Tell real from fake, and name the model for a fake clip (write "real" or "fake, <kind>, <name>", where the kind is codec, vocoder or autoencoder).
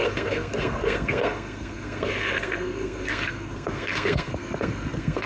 fake, codec, SNAC